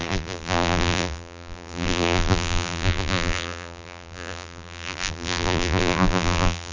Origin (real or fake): fake